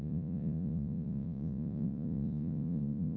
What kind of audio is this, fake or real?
fake